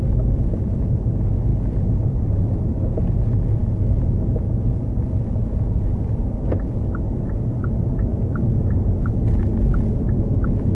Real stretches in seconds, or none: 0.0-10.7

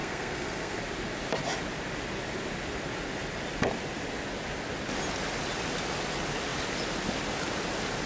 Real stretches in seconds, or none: 0.8-8.1

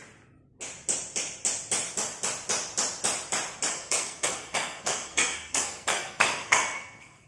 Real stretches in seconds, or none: 0.0-3.7

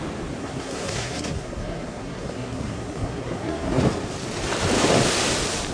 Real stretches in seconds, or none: 0.0-0.4; 3.8-5.7